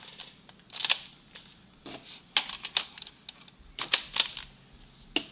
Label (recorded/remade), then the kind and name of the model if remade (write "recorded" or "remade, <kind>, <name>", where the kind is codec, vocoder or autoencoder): recorded